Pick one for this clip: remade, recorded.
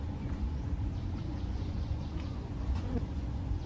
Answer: remade